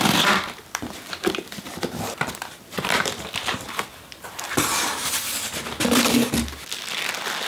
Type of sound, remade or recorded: recorded